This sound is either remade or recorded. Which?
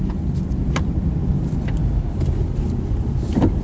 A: recorded